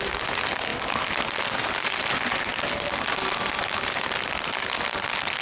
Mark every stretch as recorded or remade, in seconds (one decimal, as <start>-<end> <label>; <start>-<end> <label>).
0.0-5.4 recorded